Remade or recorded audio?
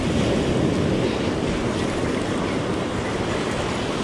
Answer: recorded